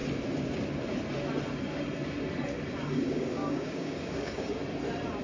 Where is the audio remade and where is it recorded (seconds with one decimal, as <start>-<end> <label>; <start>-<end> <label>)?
0.0-3.1 recorded; 3.1-4.6 remade; 4.6-5.2 recorded